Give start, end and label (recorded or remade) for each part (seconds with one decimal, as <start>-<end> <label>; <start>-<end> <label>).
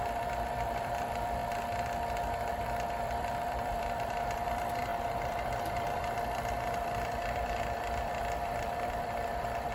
0.0-1.4 remade; 1.4-2.5 recorded; 2.5-9.7 remade